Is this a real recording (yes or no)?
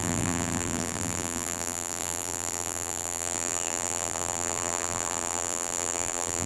no